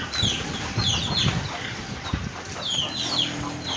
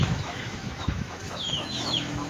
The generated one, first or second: second